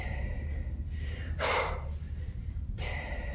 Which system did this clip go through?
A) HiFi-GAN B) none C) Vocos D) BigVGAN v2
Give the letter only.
D